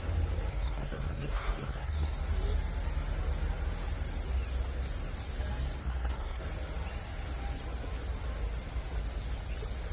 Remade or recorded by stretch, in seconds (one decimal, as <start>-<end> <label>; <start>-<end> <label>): 0.0-0.5 recorded; 0.5-2.2 remade; 2.2-5.8 recorded; 5.8-6.4 remade; 6.4-9.9 recorded